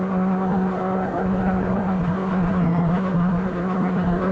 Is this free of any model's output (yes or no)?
no